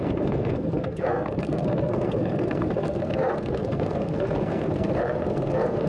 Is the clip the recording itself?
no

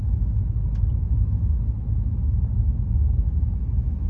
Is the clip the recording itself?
yes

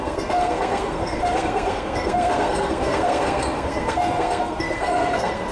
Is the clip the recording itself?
no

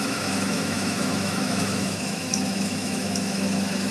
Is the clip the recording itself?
no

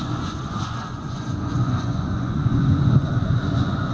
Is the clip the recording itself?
no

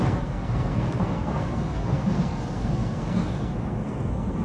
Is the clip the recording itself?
no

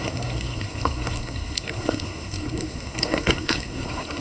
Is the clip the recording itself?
no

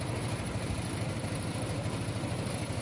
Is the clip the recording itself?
yes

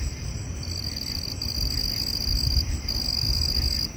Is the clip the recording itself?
yes